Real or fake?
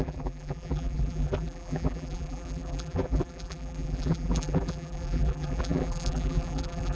fake